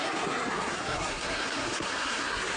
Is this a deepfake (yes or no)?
yes